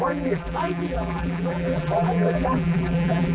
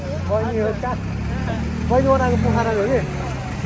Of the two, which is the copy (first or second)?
first